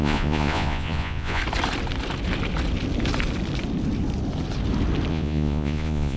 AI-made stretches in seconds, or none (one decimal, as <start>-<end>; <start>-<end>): 0.0-1.4; 5.1-6.2